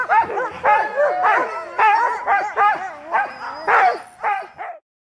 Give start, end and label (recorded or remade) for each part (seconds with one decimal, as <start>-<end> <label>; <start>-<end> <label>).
0.0-5.0 recorded